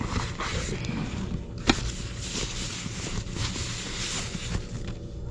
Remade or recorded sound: recorded